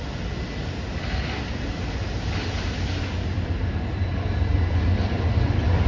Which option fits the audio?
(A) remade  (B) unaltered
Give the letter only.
B